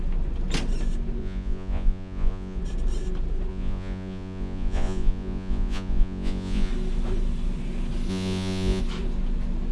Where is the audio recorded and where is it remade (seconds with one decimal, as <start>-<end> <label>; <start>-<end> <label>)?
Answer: 0.0-1.2 recorded; 1.2-2.6 remade; 2.6-3.5 recorded; 3.5-6.7 remade; 6.7-8.1 recorded; 8.1-8.8 remade; 8.8-9.7 recorded